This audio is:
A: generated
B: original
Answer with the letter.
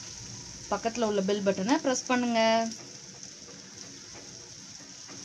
B